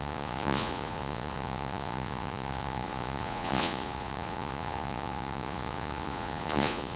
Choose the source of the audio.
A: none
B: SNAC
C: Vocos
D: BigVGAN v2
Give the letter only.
C